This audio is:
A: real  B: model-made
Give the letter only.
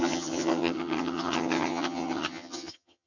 B